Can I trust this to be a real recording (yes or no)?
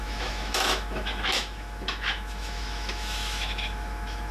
no